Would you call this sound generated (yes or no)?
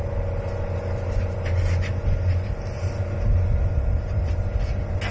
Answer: no